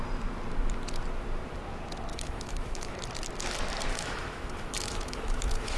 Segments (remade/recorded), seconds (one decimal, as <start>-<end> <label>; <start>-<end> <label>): 0.0-2.1 recorded; 2.1-2.9 remade; 2.9-3.9 recorded; 3.9-5.8 remade